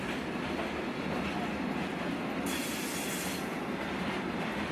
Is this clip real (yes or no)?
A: yes